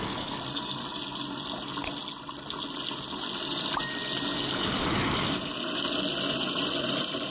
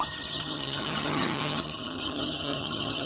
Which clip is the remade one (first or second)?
second